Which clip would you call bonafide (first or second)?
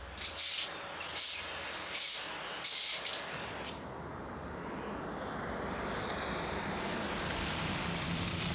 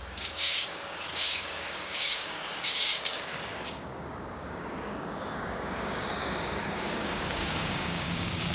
first